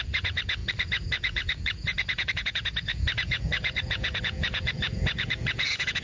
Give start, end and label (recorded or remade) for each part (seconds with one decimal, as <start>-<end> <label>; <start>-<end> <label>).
0.0-6.0 remade